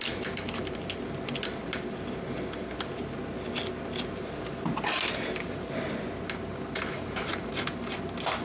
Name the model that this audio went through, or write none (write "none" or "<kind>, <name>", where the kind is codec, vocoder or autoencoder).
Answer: none